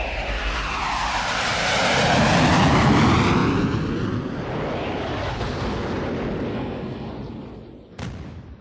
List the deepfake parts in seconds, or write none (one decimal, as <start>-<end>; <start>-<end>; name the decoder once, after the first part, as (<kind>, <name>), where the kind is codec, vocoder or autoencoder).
6.5-7.1 (codec, SNAC)